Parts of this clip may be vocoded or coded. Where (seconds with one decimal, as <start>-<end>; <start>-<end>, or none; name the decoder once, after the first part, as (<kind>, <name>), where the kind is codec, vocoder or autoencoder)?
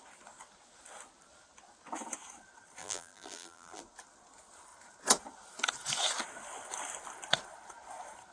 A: 2.8-3.8 (vocoder, BigVGAN v2)